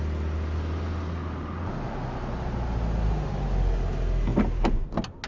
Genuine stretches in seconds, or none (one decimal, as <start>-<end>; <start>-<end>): 0.0-5.3